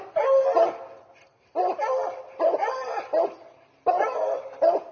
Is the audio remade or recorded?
recorded